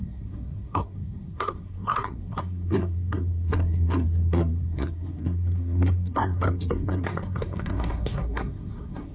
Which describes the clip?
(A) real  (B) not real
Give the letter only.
B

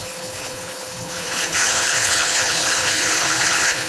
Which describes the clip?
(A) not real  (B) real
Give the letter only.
A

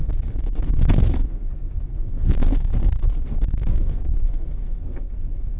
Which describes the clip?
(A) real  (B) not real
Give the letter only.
B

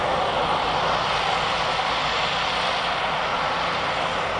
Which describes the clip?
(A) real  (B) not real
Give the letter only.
A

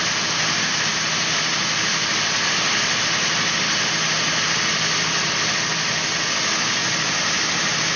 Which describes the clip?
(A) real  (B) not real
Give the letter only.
A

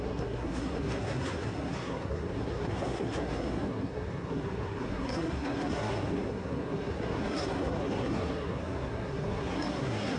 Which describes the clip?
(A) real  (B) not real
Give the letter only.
B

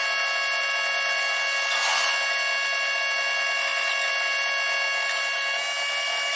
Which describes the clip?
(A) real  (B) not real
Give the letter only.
A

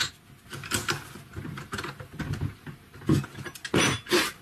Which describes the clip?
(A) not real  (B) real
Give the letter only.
B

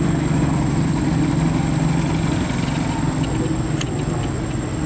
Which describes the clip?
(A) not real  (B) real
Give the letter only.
B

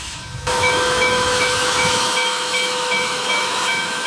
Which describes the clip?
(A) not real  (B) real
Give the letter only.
A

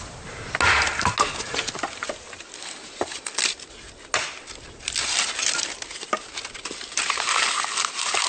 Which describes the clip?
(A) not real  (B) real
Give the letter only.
B